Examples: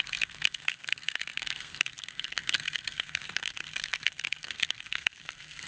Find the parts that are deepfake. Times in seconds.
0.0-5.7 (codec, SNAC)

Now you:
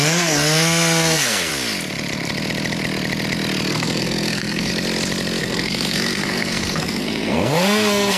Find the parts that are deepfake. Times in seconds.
0.0-1.5 (codec, SNAC); 3.7-4.7; 5.4-8.2